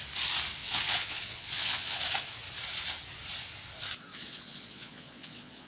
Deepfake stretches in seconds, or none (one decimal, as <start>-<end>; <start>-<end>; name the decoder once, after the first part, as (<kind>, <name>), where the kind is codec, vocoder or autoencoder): 0.6-2.0 (vocoder, Vocos); 4.1-5.7